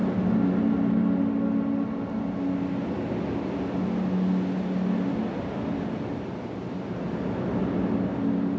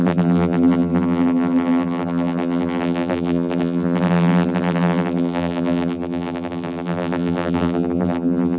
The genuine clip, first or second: first